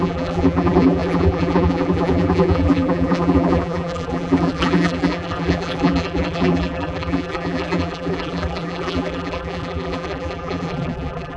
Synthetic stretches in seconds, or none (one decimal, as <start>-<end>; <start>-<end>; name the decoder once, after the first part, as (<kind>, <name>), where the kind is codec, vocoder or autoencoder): 0.0-11.4 (vocoder, BigVGAN v2)